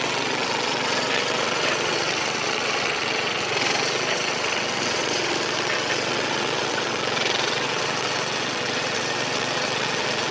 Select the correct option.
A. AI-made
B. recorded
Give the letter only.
A